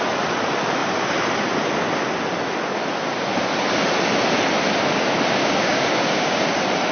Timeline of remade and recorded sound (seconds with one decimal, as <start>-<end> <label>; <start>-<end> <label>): 0.0-5.4 recorded; 5.4-6.5 remade; 6.5-6.9 recorded